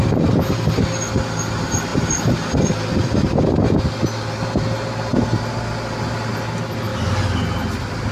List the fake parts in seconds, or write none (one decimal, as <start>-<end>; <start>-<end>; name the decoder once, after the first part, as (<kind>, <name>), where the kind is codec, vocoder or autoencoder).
none